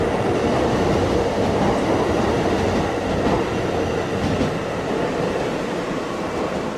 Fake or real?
real